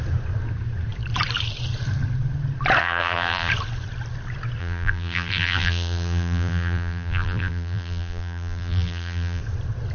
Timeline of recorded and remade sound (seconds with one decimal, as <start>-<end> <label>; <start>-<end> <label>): 0.0-2.8 recorded; 2.8-3.5 remade; 3.5-4.6 recorded; 4.6-9.4 remade; 9.4-9.9 recorded